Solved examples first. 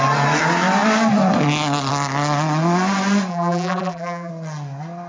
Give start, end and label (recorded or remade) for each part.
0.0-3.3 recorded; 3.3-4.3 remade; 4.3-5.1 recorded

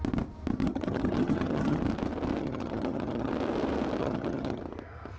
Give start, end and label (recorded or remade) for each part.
0.0-0.6 recorded; 0.6-1.8 remade; 1.8-2.4 recorded; 2.4-3.3 remade; 3.3-4.0 recorded; 4.0-4.6 remade; 4.6-5.2 recorded

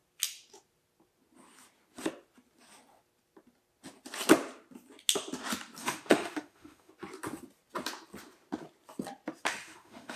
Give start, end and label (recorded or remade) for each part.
0.0-5.8 recorded; 5.8-6.9 remade; 6.9-9.5 recorded; 9.5-10.2 remade

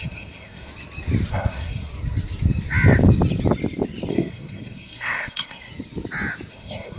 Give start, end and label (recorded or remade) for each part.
0.0-0.7 remade; 0.7-1.3 recorded; 1.3-1.9 remade; 1.9-4.1 recorded; 4.1-5.7 remade; 5.7-6.5 recorded; 6.5-7.0 remade

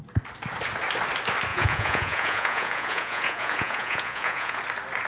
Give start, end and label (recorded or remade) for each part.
0.0-1.5 recorded; 1.5-4.6 remade; 4.6-5.1 recorded

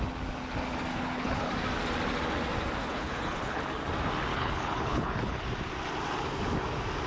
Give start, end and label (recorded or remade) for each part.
0.0-0.9 recorded; 0.9-1.5 remade; 1.5-2.8 recorded; 2.8-3.6 remade; 3.6-4.3 recorded; 4.3-5.4 remade; 5.4-7.1 recorded

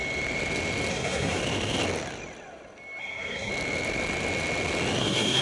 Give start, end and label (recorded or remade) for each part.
0.0-0.9 recorded; 0.9-1.4 remade; 1.4-3.0 recorded; 3.0-3.5 remade; 3.5-5.0 recorded; 5.0-5.4 remade